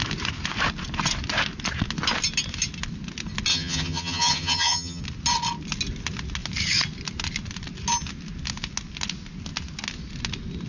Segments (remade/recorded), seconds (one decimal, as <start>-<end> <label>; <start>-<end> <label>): 0.0-3.5 recorded; 3.5-5.0 remade; 5.0-10.7 recorded